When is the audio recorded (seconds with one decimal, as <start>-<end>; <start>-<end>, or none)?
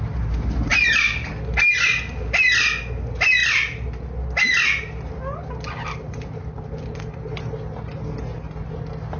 0.0-9.2